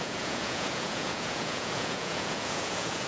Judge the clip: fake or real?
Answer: fake